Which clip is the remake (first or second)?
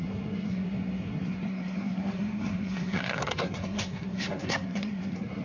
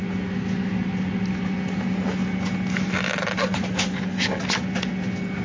first